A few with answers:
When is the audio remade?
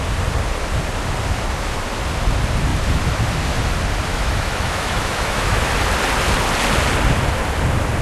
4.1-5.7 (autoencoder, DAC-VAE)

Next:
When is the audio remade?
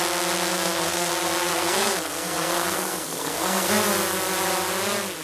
0.5-1.1 (codec, SNAC); 1.5-3.7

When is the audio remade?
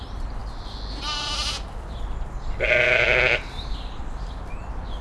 0.0-0.4 (vocoder, BigVGAN v2); 3.4-5.0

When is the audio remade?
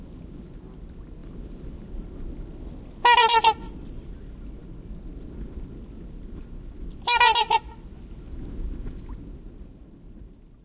none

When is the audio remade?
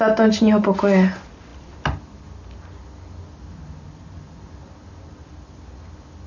none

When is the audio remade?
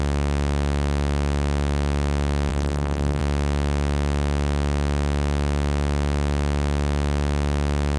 2.5-3.2 (codec, SNAC)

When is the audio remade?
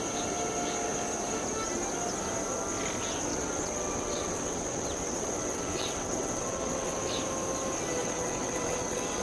3.3-7.0 (vocoder, WaveNeXt); 8.0-9.2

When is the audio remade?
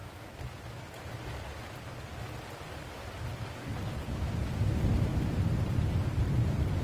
5.1-6.8 (vocoder, BigVGAN v2)